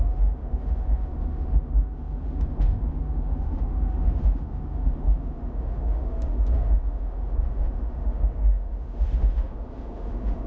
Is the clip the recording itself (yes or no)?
no